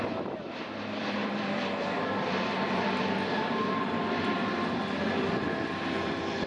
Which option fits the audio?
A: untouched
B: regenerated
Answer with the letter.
B